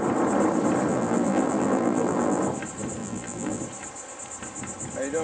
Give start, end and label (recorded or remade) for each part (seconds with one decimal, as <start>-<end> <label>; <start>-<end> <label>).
0.0-0.9 recorded; 0.9-2.4 remade; 2.4-3.0 recorded; 3.0-3.6 remade; 3.6-5.2 recorded